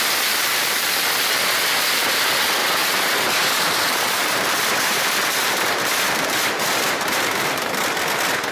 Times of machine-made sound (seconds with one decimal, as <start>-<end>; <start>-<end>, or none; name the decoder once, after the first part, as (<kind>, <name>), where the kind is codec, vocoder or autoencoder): 2.6-7.7 (vocoder, BigVGAN v2)